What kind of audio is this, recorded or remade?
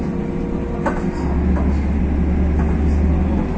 recorded